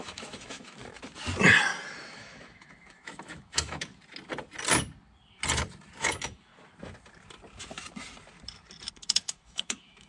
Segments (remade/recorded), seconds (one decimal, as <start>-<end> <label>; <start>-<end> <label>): 0.0-0.8 remade; 0.8-2.1 recorded; 2.1-3.9 remade; 3.9-6.0 recorded; 6.0-6.5 remade; 6.5-8.9 recorded; 8.9-10.1 remade